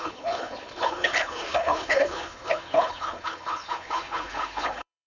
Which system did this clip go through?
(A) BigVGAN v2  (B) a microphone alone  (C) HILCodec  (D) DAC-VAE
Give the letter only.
C